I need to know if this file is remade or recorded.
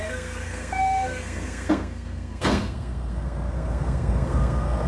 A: remade